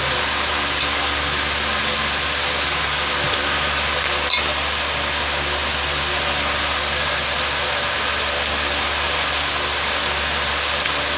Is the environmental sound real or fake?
real